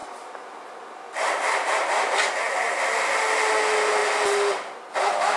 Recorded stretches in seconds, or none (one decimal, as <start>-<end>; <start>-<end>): 0.0-5.4